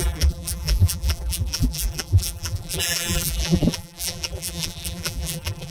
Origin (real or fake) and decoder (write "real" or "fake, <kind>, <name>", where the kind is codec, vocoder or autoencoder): fake, vocoder, BigVGAN v2